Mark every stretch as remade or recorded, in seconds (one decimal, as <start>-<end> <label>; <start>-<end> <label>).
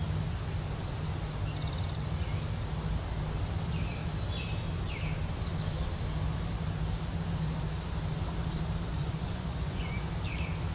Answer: 0.0-8.9 recorded; 8.9-10.0 remade; 10.0-10.7 recorded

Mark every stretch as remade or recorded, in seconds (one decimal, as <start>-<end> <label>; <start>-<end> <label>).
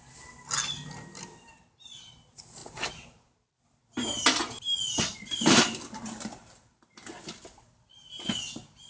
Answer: 0.0-8.9 recorded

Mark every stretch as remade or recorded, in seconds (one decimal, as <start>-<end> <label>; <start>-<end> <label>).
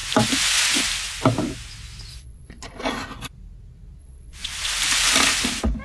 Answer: 0.0-2.1 recorded; 2.1-2.9 remade; 2.9-4.0 recorded; 4.0-4.7 remade; 4.7-5.8 recorded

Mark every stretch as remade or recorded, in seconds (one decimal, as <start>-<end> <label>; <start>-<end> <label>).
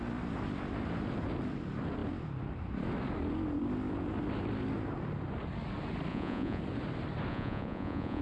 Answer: 0.0-6.1 recorded; 6.1-6.6 remade; 6.6-7.3 recorded; 7.3-8.2 remade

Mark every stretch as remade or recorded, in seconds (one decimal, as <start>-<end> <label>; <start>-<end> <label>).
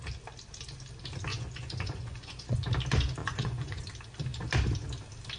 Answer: 0.0-1.3 recorded; 1.3-2.6 remade; 2.6-3.2 recorded; 3.2-3.9 remade; 3.9-5.4 recorded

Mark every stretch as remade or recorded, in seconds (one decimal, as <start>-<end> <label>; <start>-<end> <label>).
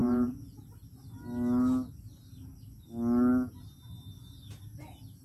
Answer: 0.0-0.6 remade; 0.6-5.2 recorded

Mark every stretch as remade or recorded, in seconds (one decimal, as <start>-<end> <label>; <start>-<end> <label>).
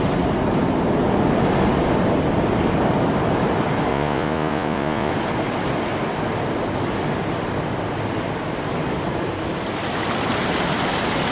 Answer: 0.0-3.9 recorded; 3.9-5.1 remade; 5.1-11.3 recorded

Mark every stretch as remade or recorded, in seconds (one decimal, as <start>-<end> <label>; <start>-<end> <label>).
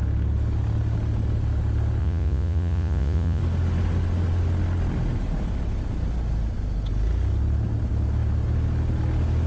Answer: 0.0-2.0 recorded; 2.0-3.4 remade; 3.4-9.5 recorded